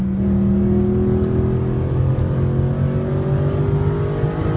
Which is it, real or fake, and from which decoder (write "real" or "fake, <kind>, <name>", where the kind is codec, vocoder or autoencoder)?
real